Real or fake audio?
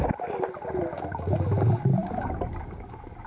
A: real